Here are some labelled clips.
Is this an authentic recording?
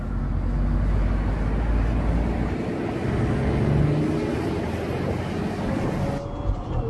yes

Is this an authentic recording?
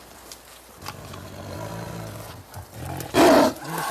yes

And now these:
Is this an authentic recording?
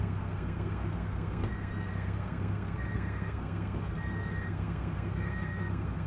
no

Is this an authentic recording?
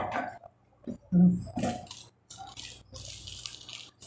yes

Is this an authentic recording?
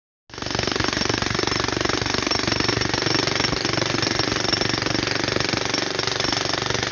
yes